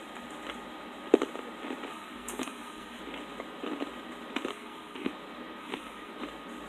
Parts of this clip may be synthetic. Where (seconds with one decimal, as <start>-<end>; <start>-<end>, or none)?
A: 1.9-3.0; 4.5-5.1; 5.6-6.1